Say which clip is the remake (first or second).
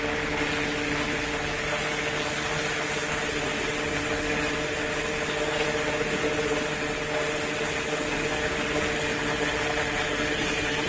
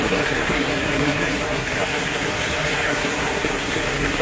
second